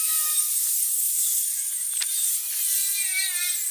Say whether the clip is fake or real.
fake